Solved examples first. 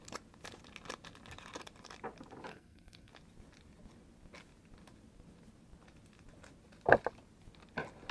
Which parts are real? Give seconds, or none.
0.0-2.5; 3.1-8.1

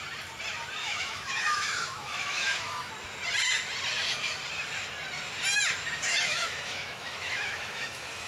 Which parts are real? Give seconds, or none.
0.0-0.8; 2.9-6.1

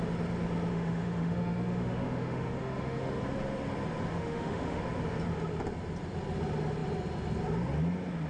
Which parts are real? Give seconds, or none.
0.0-0.7; 3.2-4.1; 4.8-8.3

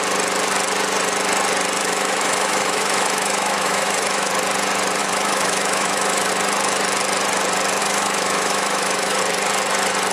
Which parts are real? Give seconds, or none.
0.0-1.8; 4.3-5.0; 6.3-7.8; 9.2-10.1